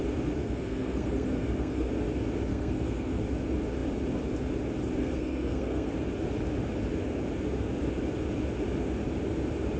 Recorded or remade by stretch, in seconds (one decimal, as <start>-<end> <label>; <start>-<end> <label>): 0.0-0.4 recorded; 0.4-1.9 remade; 1.9-2.5 recorded; 2.5-3.2 remade; 3.2-5.0 recorded; 5.0-5.9 remade; 5.9-9.8 recorded